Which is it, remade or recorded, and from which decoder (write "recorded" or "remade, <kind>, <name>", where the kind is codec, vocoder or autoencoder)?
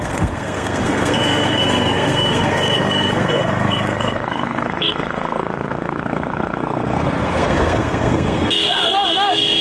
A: remade, codec, SNAC